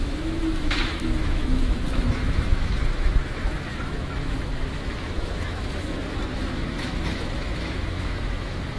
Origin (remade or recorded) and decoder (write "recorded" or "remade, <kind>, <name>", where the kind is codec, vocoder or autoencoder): remade, autoencoder, DAC-VAE